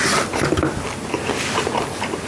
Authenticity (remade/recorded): recorded